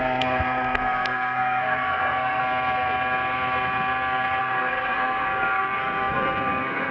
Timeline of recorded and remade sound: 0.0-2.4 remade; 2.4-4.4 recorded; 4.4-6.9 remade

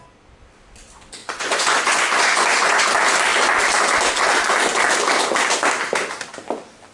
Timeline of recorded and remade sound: 0.0-1.2 recorded; 1.2-2.8 remade; 2.8-6.9 recorded